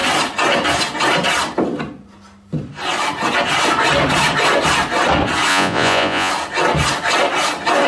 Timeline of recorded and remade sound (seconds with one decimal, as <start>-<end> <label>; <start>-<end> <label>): 0.0-5.5 recorded; 5.5-6.3 remade; 6.3-7.9 recorded